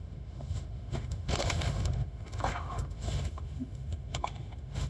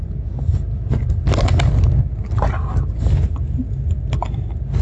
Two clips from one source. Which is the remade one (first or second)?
first